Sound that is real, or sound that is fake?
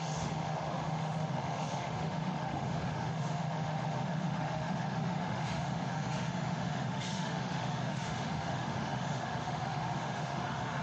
fake